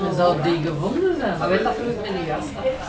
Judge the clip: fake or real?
real